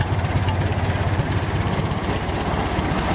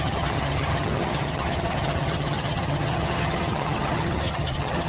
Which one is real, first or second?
first